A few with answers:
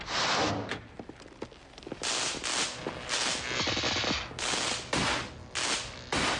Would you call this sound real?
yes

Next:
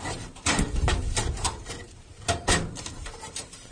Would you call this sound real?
no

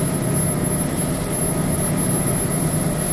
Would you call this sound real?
yes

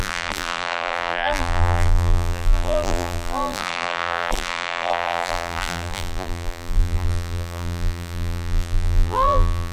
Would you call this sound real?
no